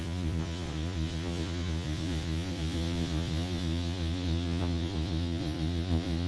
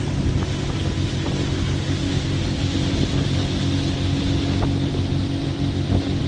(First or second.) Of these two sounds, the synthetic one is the first